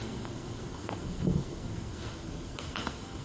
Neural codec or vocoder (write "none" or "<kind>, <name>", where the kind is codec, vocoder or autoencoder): codec, SNAC